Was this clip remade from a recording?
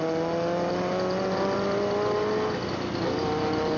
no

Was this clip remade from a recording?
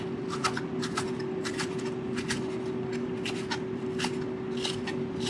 no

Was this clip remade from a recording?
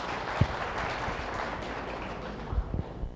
yes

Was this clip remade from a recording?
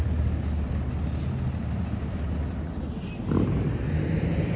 no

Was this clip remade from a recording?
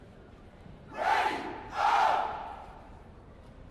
yes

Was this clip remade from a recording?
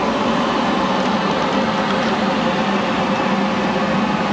no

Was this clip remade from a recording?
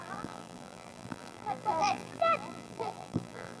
yes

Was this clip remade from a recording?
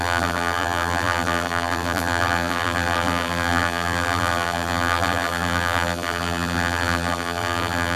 yes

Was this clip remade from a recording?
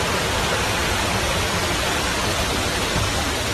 no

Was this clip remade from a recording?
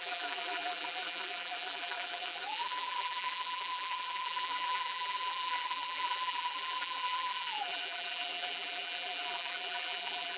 yes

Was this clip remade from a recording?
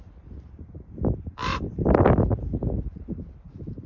yes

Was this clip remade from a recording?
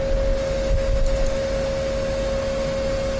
no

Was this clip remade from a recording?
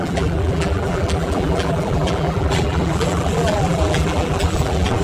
yes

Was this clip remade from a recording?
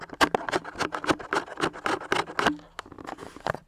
no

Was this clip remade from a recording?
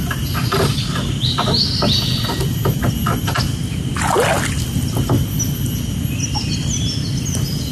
no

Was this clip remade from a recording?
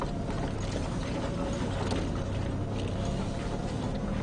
no